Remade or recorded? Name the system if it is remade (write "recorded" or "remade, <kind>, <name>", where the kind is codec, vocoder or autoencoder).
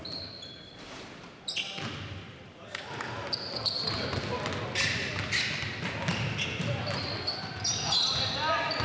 recorded